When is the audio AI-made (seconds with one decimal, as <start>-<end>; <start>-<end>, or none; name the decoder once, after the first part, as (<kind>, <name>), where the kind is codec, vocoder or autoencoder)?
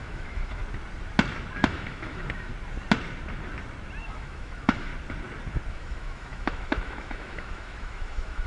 0.0-0.6 (autoencoder, DAC-VAE); 1.6-2.5; 4.0-4.9; 5.7-8.5